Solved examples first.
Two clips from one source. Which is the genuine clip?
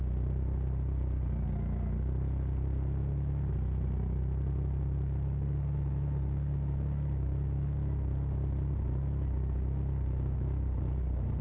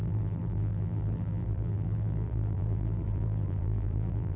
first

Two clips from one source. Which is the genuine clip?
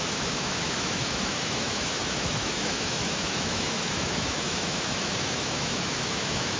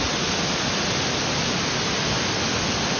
second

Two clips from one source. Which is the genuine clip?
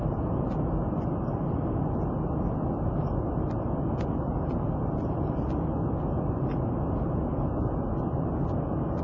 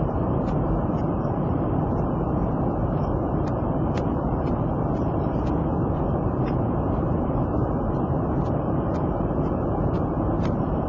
first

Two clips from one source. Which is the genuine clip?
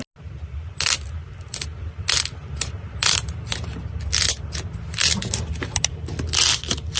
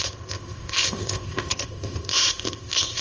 first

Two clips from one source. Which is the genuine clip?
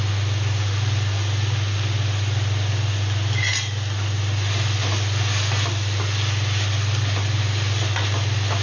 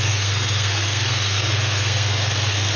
first